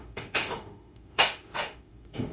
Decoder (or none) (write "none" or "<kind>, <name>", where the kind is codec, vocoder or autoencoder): autoencoder, DAC-VAE